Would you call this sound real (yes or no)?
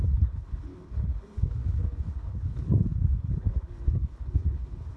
no